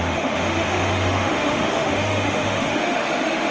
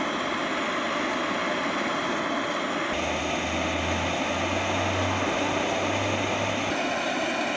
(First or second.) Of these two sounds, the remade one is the first